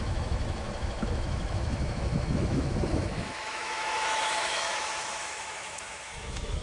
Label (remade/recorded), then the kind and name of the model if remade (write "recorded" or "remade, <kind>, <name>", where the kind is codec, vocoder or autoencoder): remade, autoencoder, DAC-VAE